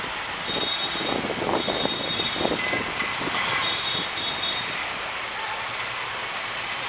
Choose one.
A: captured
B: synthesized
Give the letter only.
A